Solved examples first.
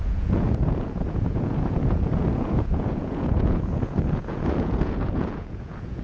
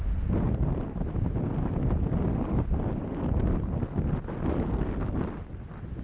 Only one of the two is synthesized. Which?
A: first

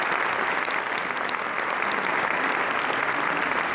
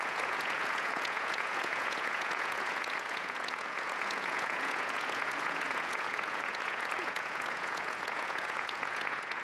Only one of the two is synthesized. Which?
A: second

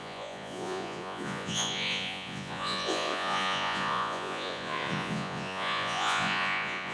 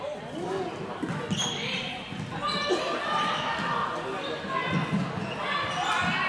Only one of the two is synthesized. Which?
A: first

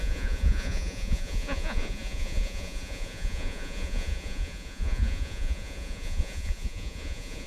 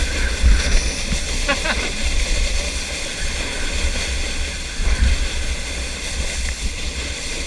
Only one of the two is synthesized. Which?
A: first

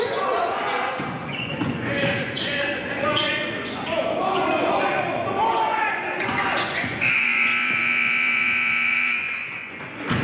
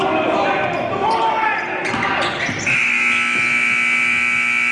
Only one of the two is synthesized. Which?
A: first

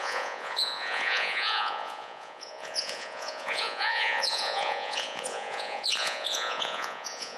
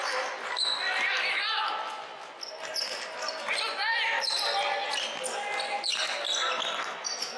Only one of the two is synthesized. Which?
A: first